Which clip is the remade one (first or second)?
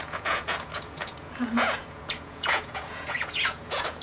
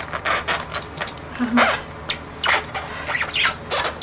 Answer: first